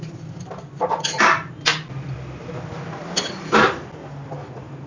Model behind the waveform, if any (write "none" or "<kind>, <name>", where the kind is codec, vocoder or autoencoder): none